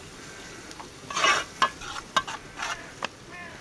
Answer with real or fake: real